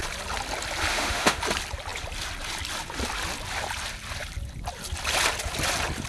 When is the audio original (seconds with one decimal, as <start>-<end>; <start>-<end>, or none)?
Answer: 0.0-0.9; 1.4-6.1